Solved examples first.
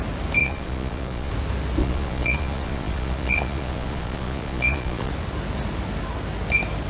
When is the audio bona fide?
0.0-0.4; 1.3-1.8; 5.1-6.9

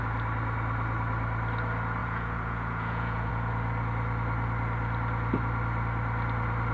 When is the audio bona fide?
0.0-2.0; 3.3-6.7

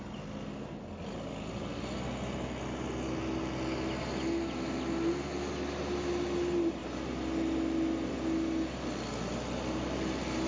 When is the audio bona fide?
0.0-10.5